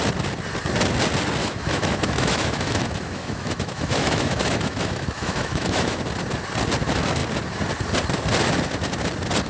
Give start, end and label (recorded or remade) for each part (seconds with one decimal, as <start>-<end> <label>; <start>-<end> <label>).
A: 0.0-1.4 recorded; 1.4-6.0 remade; 6.0-9.5 recorded